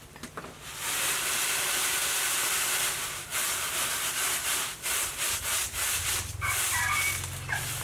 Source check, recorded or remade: remade